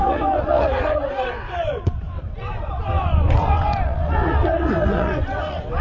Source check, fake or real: fake